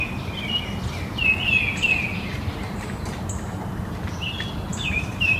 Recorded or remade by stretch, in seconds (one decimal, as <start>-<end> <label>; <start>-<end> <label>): 0.0-4.7 recorded; 4.7-5.4 remade